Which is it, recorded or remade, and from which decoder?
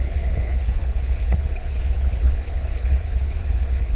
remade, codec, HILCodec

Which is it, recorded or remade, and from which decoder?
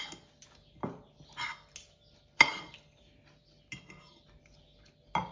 recorded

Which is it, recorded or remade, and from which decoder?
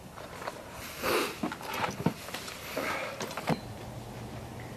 recorded